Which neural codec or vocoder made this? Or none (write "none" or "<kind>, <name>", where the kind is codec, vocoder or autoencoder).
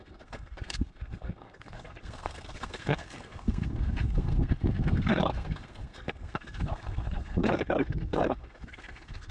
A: codec, SNAC